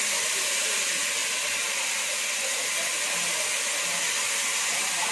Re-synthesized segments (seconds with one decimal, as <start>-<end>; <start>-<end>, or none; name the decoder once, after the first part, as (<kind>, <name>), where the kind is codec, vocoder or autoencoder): none